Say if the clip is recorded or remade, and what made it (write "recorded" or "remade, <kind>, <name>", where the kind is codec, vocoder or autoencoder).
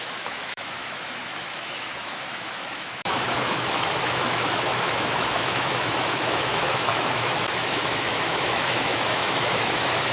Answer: remade, autoencoder, DAC-VAE